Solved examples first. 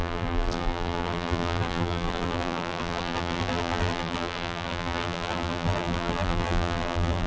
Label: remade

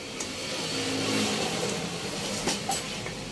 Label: recorded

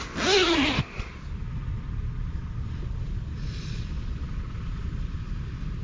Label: recorded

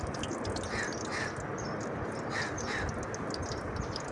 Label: recorded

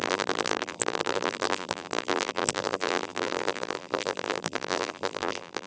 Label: remade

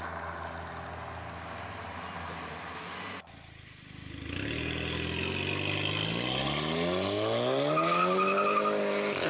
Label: recorded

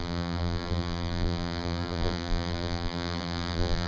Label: remade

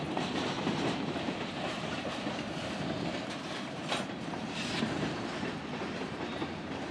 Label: remade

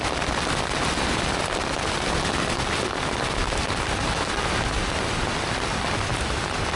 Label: recorded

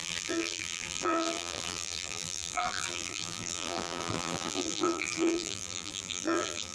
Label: remade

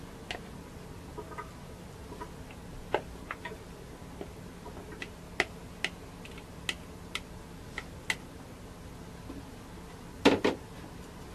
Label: recorded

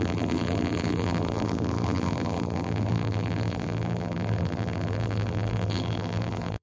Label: remade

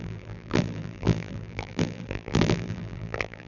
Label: remade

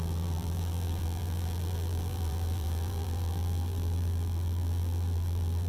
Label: remade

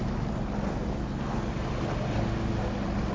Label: recorded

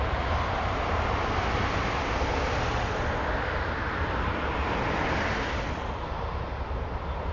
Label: recorded